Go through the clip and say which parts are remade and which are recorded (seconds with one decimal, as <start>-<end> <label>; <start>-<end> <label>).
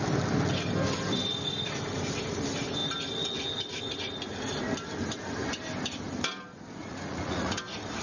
0.0-6.8 recorded; 6.8-7.6 remade; 7.6-8.0 recorded